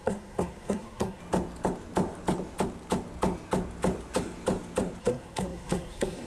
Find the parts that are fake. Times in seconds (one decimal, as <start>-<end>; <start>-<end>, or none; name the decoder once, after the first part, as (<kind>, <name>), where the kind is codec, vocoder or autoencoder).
0.0-1.2 (codec, SNAC); 5.0-6.3